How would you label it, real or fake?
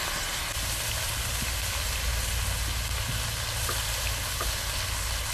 real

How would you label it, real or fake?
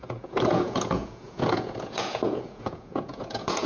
fake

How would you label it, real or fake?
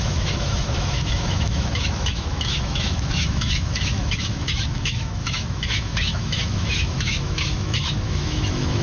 fake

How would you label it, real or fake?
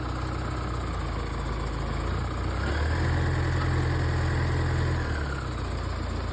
real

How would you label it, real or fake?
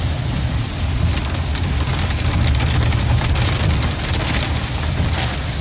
real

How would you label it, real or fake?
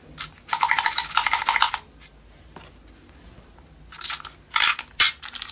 real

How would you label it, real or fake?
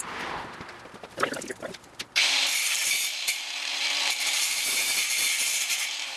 fake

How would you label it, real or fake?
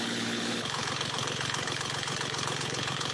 fake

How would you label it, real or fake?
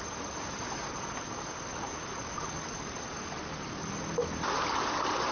real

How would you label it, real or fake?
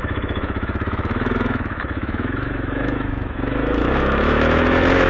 fake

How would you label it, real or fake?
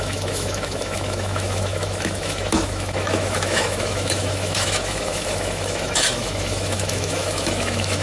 fake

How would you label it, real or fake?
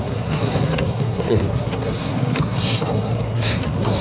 fake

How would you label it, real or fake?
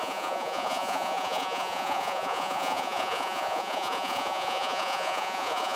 fake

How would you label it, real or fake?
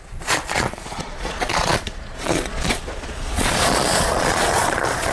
fake